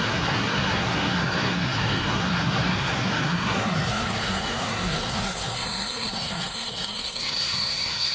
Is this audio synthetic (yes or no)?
yes